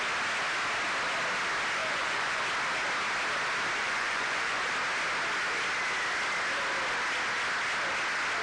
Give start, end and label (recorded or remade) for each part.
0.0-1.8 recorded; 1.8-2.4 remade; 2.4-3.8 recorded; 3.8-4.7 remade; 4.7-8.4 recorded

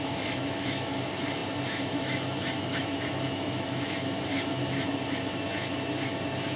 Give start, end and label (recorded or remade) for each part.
0.0-6.6 remade

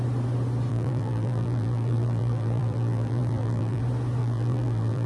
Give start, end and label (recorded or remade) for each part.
0.0-0.7 recorded; 0.7-3.8 remade; 3.8-4.2 recorded; 4.2-5.1 remade

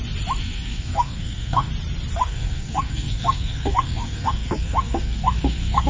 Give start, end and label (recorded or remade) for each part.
0.0-0.4 recorded; 0.4-1.7 remade; 1.7-2.2 recorded; 2.2-5.9 remade